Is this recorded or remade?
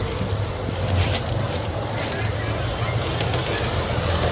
recorded